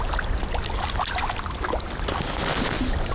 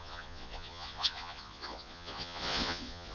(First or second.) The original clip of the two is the first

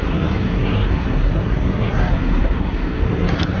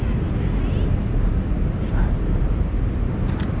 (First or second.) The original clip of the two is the second